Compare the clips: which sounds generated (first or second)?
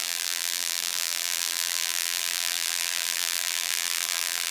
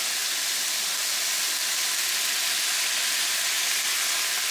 first